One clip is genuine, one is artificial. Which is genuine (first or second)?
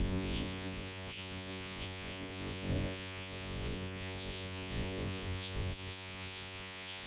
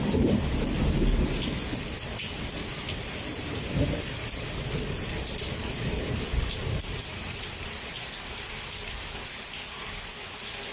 second